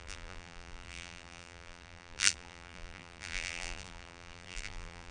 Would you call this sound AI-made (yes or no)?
yes